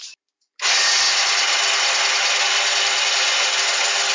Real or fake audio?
real